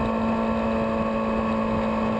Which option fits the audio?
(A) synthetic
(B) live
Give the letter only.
B